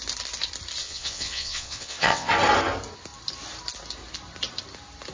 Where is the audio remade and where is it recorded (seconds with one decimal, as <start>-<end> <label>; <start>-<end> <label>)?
0.0-0.8 recorded; 0.8-2.3 remade; 2.3-5.1 recorded